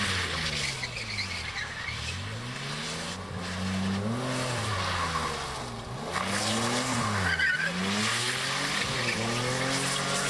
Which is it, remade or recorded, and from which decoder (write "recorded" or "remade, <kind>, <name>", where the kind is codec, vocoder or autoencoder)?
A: recorded